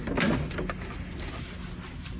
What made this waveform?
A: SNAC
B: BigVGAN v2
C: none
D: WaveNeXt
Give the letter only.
C